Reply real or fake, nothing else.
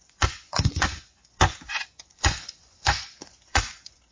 fake